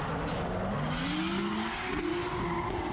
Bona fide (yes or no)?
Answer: yes